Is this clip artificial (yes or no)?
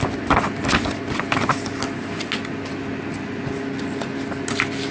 no